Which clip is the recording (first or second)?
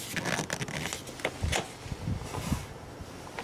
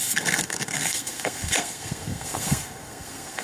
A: first